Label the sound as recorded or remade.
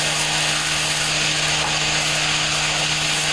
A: recorded